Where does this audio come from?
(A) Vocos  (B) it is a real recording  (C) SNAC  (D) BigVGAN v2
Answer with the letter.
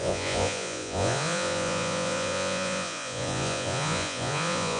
A